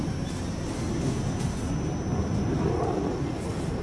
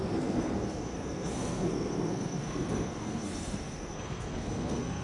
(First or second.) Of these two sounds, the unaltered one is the first